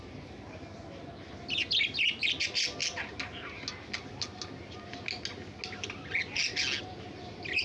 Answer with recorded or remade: recorded